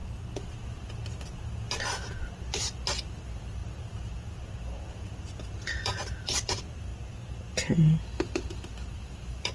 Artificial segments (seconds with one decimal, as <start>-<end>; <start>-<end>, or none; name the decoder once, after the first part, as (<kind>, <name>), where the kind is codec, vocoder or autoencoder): 3.2-3.6 (vocoder, BigVGAN v2); 5.7-6.9; 9.0-9.5